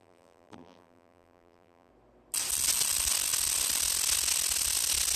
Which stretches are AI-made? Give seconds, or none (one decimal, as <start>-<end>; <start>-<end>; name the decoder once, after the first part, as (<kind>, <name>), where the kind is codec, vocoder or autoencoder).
0.0-1.9 (vocoder, BigVGAN v2)